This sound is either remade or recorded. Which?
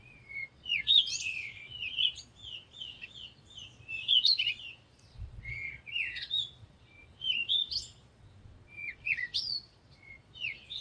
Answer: remade